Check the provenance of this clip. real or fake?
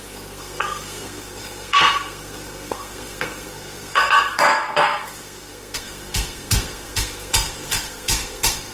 fake